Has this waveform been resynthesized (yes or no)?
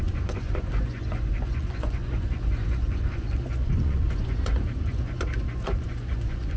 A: yes